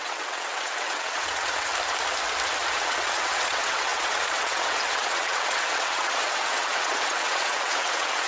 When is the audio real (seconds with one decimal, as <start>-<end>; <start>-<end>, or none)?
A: 1.7-2.7